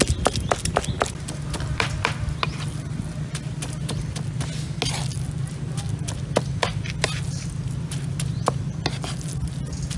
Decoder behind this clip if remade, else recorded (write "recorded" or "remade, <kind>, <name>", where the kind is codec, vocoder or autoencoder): recorded